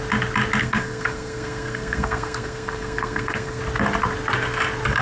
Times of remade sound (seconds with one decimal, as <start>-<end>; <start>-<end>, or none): 0.6-3.6